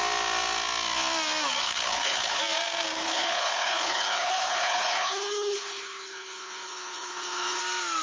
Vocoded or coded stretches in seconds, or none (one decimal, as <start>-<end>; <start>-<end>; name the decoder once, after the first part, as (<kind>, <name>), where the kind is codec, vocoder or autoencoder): 1.6-2.4 (codec, HILCodec); 3.0-7.6